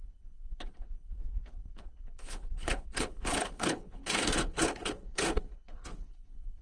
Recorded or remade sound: remade